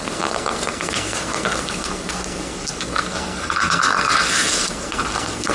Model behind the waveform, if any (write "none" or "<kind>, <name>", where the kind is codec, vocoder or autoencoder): codec, SNAC